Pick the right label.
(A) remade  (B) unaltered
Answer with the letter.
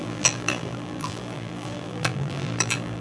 A